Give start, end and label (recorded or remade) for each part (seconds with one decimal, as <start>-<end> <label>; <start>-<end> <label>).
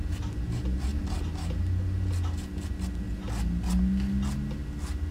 0.0-5.1 recorded